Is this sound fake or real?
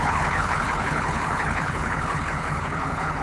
fake